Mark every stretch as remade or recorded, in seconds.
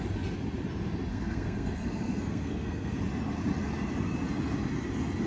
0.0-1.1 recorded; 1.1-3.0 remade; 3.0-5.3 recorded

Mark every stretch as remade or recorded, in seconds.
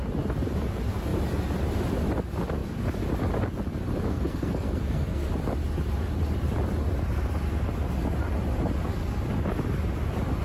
0.0-4.1 recorded; 4.1-5.3 remade; 5.3-10.4 recorded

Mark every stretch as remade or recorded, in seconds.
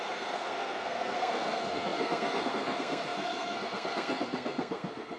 0.0-5.2 remade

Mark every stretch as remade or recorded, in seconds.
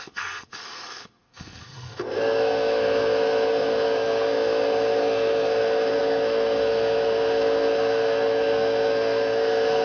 0.0-9.8 remade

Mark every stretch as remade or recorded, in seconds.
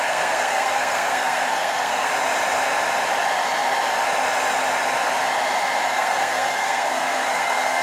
0.0-2.1 remade; 2.1-5.9 recorded; 5.9-7.8 remade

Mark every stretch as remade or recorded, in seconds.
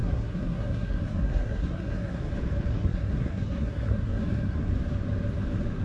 0.0-2.3 remade; 2.3-2.7 recorded; 2.7-4.7 remade; 4.7-5.8 recorded